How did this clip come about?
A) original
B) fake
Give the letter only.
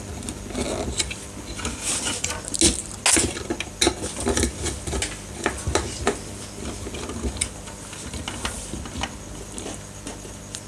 A